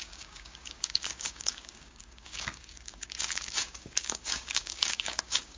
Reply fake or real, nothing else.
fake